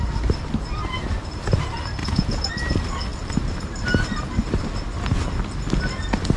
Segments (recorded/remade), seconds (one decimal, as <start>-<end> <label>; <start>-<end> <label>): 0.0-2.0 recorded; 2.0-2.5 remade; 2.5-6.4 recorded